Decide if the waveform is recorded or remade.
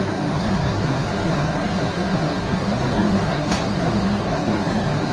remade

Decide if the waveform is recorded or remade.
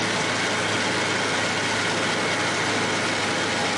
recorded